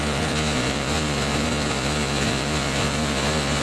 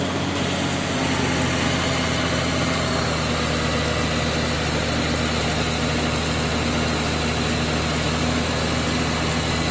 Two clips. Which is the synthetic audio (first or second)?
first